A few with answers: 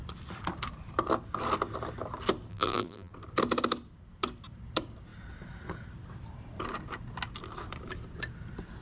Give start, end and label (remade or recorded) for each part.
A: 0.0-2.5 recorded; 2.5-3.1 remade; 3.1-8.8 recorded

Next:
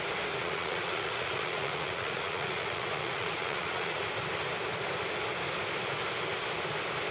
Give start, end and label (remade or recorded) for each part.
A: 0.0-0.4 recorded; 0.4-4.0 remade; 4.0-7.1 recorded

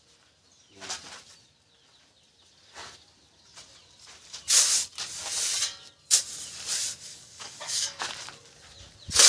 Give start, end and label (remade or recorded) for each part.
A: 0.0-7.1 recorded; 7.1-8.0 remade; 8.0-9.3 recorded

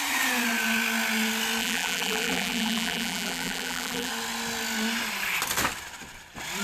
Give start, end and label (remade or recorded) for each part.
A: 0.0-1.6 recorded; 1.6-4.1 remade; 4.1-6.6 recorded